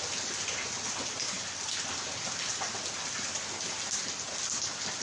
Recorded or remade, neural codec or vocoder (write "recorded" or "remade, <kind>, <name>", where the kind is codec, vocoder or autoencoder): recorded